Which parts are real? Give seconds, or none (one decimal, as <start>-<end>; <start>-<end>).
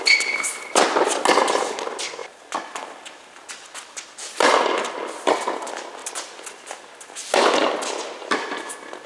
0.0-9.1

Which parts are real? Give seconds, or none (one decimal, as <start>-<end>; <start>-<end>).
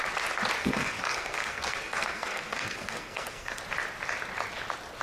0.0-0.6; 3.6-5.0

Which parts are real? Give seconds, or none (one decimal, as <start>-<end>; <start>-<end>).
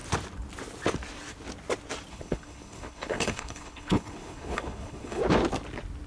0.0-2.1; 5.2-6.1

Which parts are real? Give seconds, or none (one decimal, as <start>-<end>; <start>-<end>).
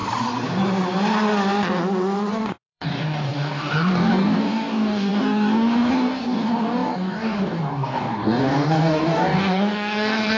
0.0-2.3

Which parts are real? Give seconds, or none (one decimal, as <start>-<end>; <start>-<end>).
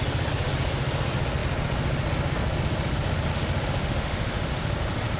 0.0-3.8; 4.5-5.2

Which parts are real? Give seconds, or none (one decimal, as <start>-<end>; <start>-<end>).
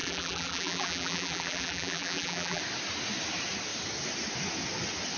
2.6-5.2